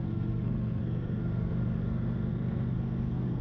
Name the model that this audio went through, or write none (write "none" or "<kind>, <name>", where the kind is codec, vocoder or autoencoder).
codec, SNAC